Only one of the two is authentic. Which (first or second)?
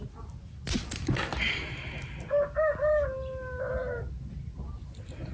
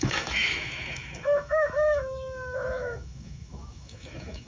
first